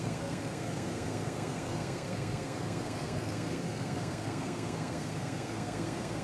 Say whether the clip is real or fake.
fake